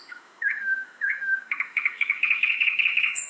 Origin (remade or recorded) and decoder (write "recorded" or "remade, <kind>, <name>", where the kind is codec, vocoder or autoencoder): remade, autoencoder, DAC-VAE